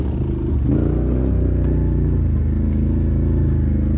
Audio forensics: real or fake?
real